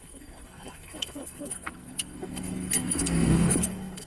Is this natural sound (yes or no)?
no